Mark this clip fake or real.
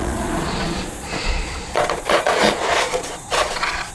fake